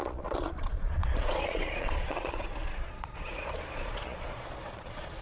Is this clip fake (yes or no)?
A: yes